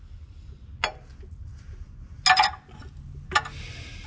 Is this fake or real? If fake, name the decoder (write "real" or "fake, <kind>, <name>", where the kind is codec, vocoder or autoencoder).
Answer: real